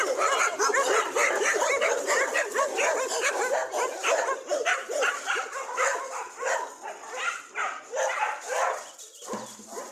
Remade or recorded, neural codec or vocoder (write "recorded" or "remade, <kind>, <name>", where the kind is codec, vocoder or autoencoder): recorded